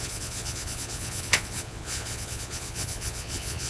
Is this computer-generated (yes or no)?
yes